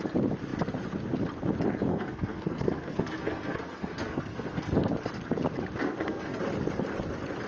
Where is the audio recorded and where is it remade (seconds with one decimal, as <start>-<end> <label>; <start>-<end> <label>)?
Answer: 0.0-1.9 recorded; 1.9-4.9 remade; 4.9-5.8 recorded; 5.8-6.4 remade; 6.4-7.5 recorded